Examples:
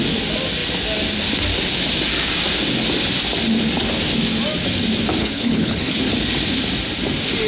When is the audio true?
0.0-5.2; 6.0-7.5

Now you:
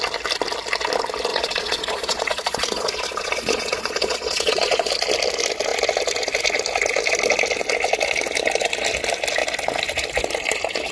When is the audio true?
0.0-1.3; 4.9-10.9